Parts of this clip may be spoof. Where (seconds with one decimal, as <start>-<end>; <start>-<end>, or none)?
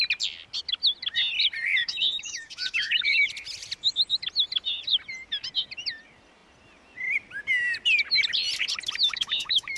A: 1.8-3.3; 9.0-9.8